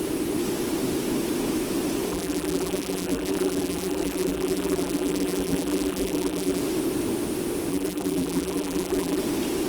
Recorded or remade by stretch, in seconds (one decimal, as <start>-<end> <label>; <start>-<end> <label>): 0.0-2.1 recorded; 2.1-6.6 remade; 6.6-7.7 recorded; 7.7-9.2 remade; 9.2-9.7 recorded